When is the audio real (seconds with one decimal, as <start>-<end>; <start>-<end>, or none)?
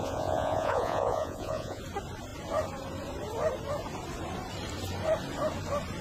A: 1.8-6.0